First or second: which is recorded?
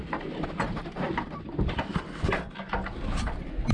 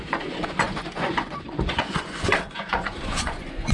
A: first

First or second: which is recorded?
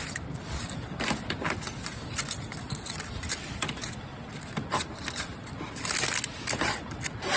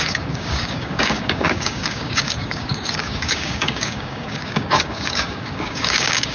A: first